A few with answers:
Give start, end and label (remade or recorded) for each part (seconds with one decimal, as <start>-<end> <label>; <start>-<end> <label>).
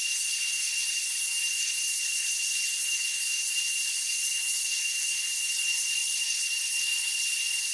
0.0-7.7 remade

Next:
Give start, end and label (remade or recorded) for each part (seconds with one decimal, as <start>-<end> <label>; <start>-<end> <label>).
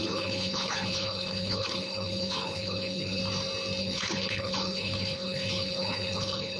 0.0-3.2 remade; 3.2-3.8 recorded; 3.8-6.6 remade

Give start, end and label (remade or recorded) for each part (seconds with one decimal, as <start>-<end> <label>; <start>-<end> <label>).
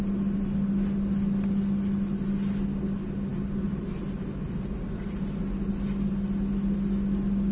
0.0-7.5 recorded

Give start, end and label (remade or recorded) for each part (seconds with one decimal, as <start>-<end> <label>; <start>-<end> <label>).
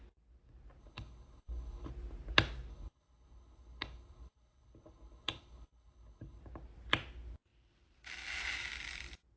0.0-0.8 recorded; 0.8-1.9 remade; 1.9-2.7 recorded; 2.7-6.4 remade; 6.4-9.4 recorded